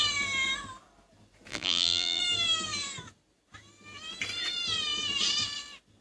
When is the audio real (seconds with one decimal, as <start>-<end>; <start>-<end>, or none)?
0.0-1.5; 2.2-6.0